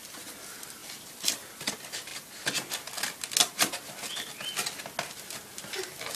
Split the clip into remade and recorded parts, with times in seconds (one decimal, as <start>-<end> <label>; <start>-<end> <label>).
0.0-0.8 recorded; 0.8-1.7 remade; 1.7-6.2 recorded